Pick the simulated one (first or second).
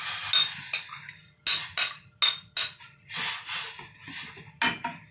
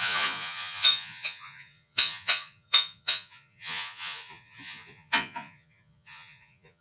second